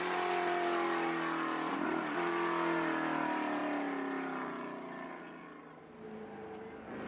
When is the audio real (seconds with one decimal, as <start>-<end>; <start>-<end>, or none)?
0.0-7.1